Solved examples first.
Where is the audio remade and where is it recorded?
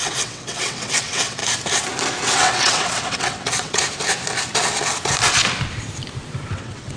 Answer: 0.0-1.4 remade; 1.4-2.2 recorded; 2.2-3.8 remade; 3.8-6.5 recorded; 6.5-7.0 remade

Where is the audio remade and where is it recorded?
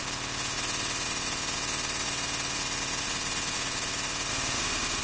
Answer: 0.0-4.3 recorded; 4.3-5.0 remade